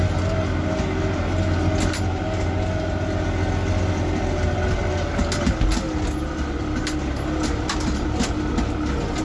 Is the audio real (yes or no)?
yes